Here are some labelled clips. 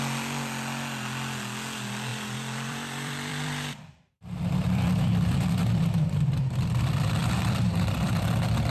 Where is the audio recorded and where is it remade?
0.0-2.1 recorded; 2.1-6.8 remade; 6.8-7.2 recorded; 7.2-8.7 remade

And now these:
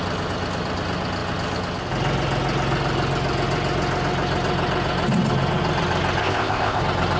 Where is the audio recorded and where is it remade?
0.0-6.2 recorded; 6.2-6.8 remade; 6.8-7.2 recorded

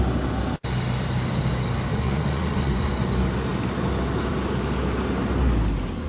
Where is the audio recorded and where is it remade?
0.0-1.9 recorded; 1.9-2.9 remade; 2.9-6.1 recorded

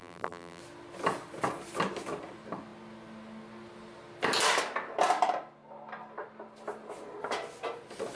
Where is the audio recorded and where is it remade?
0.0-0.6 remade; 0.6-8.2 recorded

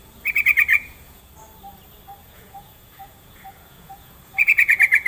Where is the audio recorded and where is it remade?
0.0-0.7 recorded; 0.7-1.3 remade; 1.3-2.2 recorded; 2.2-5.1 remade